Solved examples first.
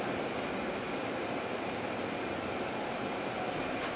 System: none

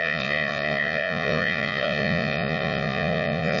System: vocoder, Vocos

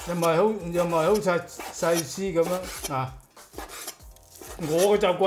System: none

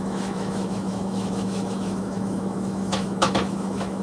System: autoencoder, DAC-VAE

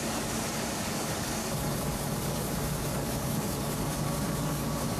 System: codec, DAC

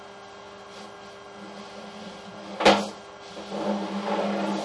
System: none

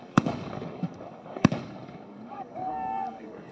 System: codec, DAC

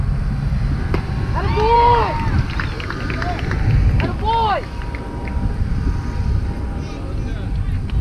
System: none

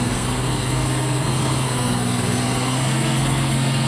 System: codec, SNAC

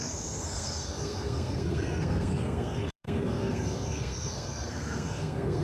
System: codec, SNAC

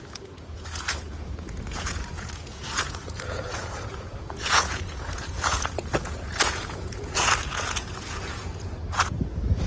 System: vocoder, Vocos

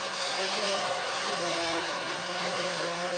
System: codec, SNAC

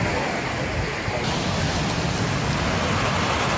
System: none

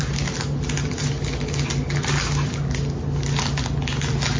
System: none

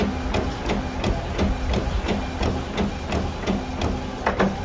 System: none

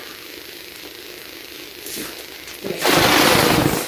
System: none